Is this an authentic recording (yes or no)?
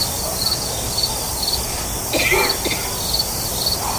yes